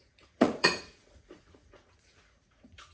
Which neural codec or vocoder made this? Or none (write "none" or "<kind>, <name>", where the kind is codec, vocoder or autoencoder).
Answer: vocoder, Vocos